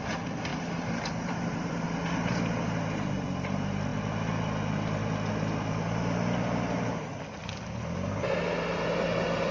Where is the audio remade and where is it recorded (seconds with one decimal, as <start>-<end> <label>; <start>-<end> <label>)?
0.0-0.5 recorded; 0.5-1.7 remade; 1.7-9.5 recorded